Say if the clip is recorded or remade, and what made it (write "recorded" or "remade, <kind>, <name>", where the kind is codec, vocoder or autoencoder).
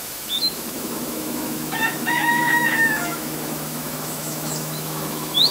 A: remade, autoencoder, DAC-VAE